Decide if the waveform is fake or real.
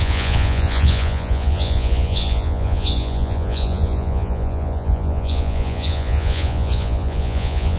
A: fake